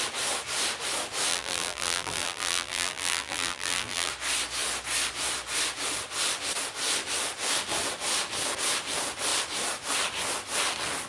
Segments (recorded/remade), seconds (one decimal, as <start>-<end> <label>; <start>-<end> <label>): 0.0-1.3 recorded; 1.3-4.1 remade; 4.1-11.1 recorded